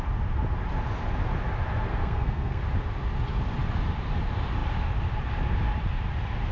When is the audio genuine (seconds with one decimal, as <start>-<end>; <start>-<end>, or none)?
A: 0.0-1.9; 2.6-6.5